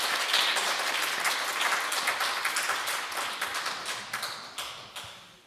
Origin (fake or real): real